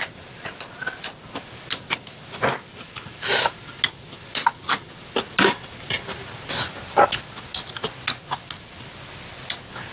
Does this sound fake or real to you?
real